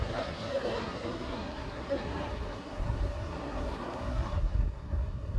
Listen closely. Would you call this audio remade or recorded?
remade